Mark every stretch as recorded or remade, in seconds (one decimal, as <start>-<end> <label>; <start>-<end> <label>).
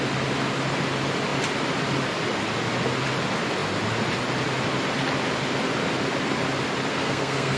0.0-6.9 recorded; 6.9-7.6 remade